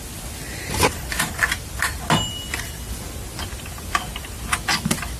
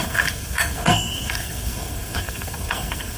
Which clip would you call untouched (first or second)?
first